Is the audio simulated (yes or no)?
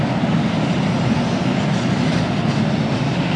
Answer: no